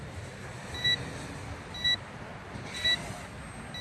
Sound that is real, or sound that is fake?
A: real